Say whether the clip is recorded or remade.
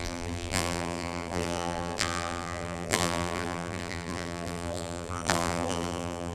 remade